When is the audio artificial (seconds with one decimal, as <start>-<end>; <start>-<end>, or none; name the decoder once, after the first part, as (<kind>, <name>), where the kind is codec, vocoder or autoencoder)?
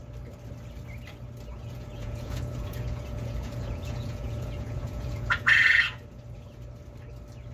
1.5-6.0 (vocoder, Vocos)